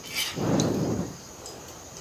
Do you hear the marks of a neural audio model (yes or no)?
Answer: yes